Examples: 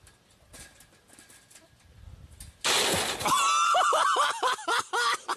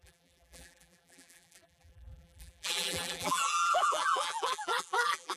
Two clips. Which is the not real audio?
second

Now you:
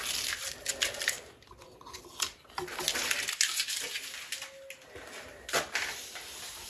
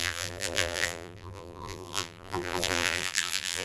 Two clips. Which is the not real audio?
second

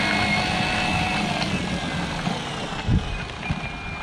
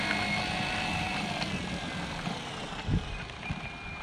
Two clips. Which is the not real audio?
second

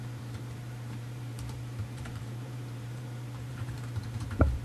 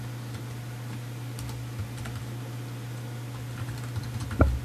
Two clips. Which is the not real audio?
first